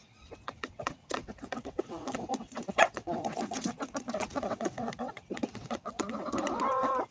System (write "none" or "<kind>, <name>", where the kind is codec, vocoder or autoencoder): vocoder, WaveNeXt